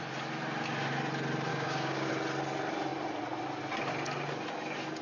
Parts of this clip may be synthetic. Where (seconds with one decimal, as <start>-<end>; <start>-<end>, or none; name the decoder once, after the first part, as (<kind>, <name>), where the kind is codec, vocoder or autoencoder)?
1.5-2.1 (codec, DAC)